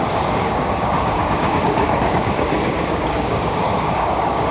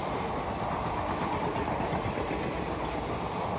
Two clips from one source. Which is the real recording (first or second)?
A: second